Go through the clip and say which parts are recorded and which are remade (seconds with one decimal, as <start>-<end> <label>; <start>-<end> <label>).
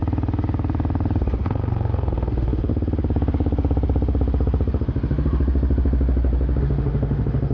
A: 0.0-1.4 recorded; 1.4-2.7 remade; 2.7-6.6 recorded; 6.6-7.5 remade